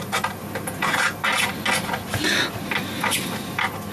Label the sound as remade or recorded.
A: recorded